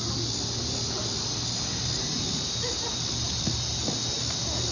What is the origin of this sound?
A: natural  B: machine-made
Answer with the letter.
A